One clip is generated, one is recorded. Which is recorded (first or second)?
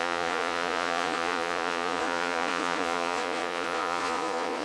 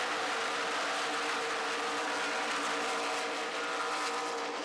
second